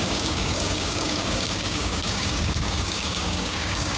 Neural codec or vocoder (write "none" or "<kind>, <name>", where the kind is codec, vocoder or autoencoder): codec, DAC